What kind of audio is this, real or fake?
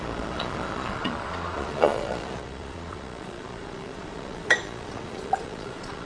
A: fake